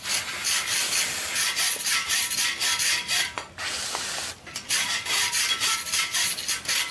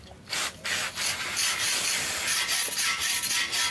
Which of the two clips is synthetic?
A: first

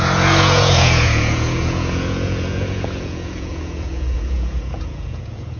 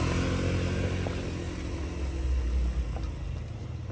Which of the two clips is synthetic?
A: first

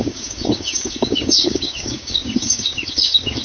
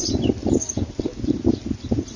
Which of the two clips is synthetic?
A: first